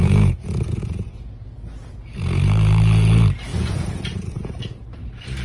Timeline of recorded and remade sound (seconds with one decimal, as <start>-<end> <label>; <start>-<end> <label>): 0.0-1.3 remade; 1.3-3.5 recorded; 3.5-4.9 remade; 4.9-5.4 recorded